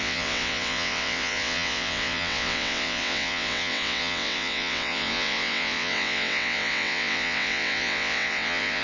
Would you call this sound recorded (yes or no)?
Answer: no